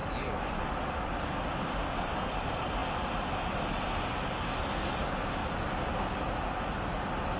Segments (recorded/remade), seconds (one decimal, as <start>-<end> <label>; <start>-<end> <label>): 0.0-7.4 recorded